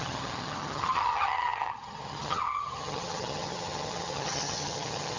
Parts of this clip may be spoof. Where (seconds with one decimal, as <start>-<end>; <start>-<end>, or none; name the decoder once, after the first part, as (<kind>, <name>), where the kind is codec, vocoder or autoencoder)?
0.0-5.2 (vocoder, HiFi-GAN)